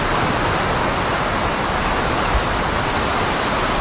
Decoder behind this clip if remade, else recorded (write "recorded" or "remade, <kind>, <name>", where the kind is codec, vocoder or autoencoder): recorded